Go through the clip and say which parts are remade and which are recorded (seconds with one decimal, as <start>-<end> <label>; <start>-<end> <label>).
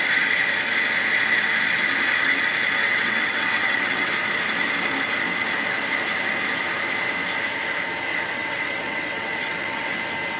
0.0-2.8 recorded; 2.8-4.1 remade; 4.1-8.1 recorded; 8.1-10.0 remade; 10.0-10.4 recorded